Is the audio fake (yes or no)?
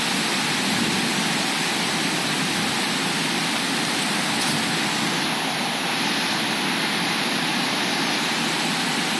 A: no